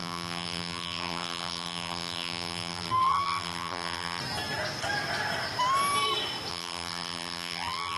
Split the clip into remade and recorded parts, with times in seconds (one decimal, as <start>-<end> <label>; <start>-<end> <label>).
0.0-4.2 remade; 4.2-6.5 recorded; 6.5-8.0 remade